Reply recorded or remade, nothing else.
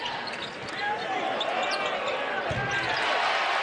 recorded